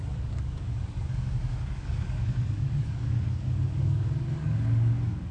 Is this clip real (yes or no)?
no